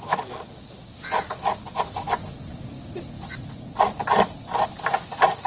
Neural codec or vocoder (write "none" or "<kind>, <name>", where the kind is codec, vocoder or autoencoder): none